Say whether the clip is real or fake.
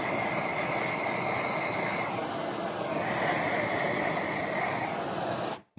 real